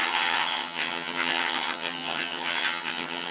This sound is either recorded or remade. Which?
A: remade